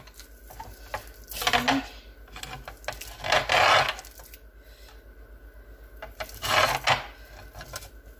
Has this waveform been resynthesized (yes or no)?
no